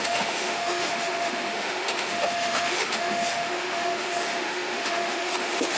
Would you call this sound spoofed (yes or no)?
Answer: yes